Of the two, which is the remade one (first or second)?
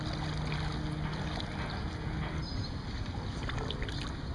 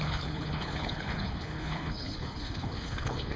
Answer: second